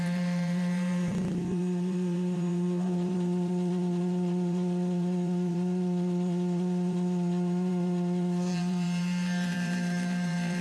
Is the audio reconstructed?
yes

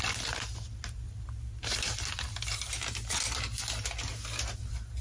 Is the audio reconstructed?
no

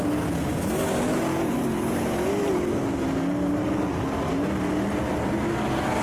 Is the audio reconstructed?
no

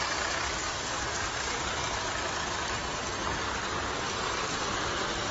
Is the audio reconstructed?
no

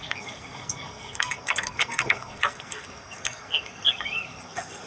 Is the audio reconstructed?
yes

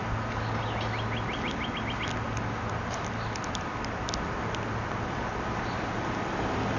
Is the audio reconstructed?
no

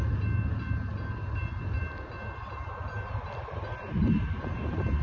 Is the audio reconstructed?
yes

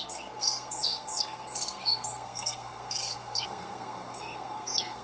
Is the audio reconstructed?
yes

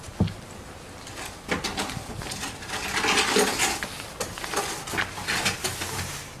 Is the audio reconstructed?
no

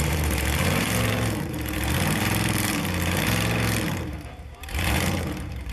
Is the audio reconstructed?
yes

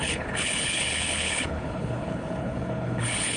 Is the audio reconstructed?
yes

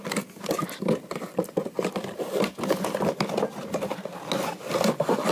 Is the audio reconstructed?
no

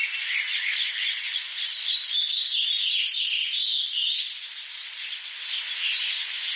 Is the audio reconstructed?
no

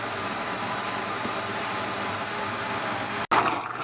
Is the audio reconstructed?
no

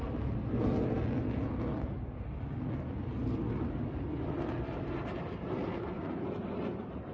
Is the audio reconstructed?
no